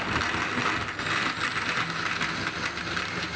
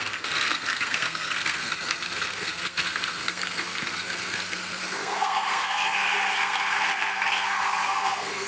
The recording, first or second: first